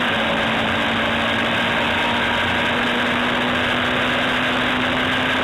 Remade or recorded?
recorded